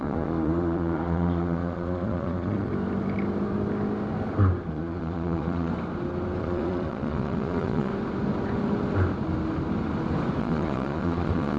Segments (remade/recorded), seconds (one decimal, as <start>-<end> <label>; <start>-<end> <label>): 0.0-2.7 remade; 2.7-4.7 recorded; 4.7-5.7 remade; 5.7-6.4 recorded; 6.4-7.9 remade; 7.9-10.4 recorded; 10.4-11.6 remade